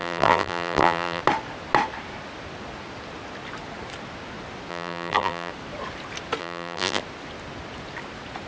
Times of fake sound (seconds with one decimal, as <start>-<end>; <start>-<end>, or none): 0.0-1.2; 4.7-5.5; 6.4-7.0